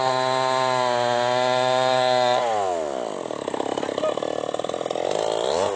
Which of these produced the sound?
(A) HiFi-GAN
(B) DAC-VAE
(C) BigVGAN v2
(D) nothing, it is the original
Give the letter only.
D